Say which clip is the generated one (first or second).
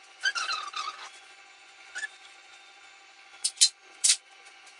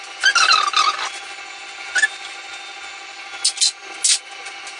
first